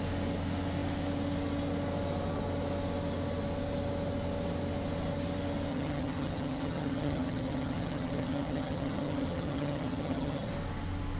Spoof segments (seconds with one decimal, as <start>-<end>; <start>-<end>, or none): 5.7-10.5